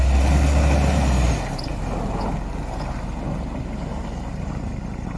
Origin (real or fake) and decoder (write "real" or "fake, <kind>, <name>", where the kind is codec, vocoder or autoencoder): real